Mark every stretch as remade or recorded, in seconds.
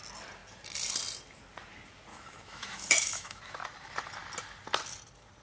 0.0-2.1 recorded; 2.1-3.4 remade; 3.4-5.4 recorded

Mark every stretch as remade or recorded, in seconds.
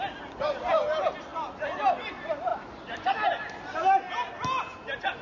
0.0-5.2 recorded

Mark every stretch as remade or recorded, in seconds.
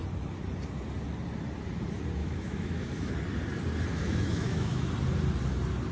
0.0-2.2 recorded; 2.2-3.1 remade; 3.1-3.9 recorded; 3.9-4.9 remade; 4.9-5.9 recorded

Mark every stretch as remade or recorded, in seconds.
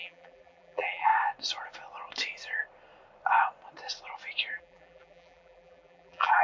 0.0-1.1 remade; 1.1-4.5 recorded; 4.5-6.4 remade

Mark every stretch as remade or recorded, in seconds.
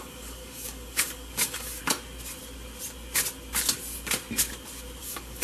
0.0-1.8 remade; 1.8-5.0 recorded; 5.0-5.4 remade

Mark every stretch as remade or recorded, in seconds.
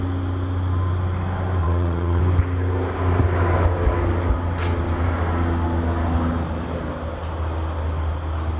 0.0-1.6 recorded; 1.6-2.2 remade; 2.2-8.6 recorded